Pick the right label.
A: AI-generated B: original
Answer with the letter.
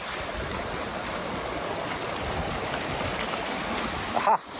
B